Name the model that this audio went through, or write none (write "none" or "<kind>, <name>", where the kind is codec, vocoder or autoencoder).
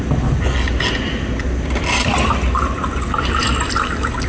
vocoder, BigVGAN v2